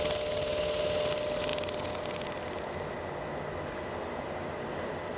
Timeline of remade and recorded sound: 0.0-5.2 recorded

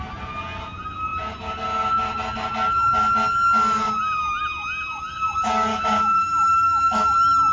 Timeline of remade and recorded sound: 0.0-5.7 recorded; 5.7-7.0 remade; 7.0-7.5 recorded

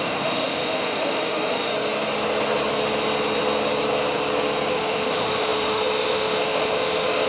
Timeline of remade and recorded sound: 0.0-1.7 remade; 1.7-4.7 recorded; 4.7-7.3 remade

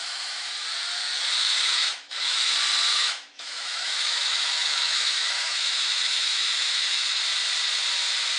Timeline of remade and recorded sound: 0.0-0.5 remade; 0.5-1.4 recorded; 1.4-2.5 remade; 2.5-2.9 recorded; 2.9-7.2 remade; 7.2-8.4 recorded

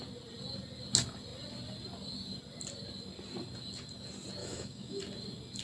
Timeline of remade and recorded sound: 0.0-4.4 recorded; 4.4-5.0 remade; 5.0-5.6 recorded

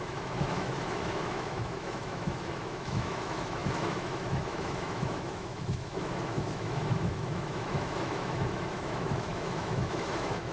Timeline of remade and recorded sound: 0.0-10.5 remade